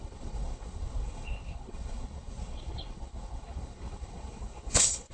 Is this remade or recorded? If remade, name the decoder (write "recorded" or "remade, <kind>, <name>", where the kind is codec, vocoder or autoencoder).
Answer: remade, codec, HILCodec